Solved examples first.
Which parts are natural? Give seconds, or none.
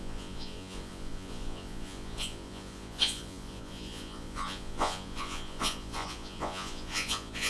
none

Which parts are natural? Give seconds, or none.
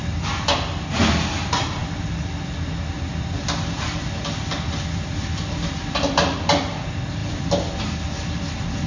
0.0-8.9